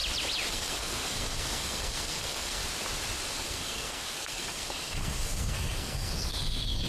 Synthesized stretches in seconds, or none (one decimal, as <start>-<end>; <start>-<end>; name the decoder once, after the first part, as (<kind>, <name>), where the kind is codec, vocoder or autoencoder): 0.5-2.6 (codec, SNAC); 3.3-6.9